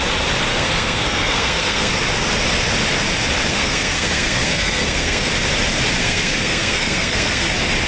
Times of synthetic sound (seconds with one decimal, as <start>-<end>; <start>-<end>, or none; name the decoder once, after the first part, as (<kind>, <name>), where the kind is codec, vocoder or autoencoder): 0.5-1.9 (codec, SNAC); 3.5-5.3; 6.0-7.5